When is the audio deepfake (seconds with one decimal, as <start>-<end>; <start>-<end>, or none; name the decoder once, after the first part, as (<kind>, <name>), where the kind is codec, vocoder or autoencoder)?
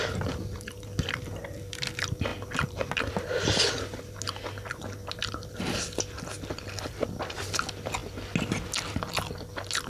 none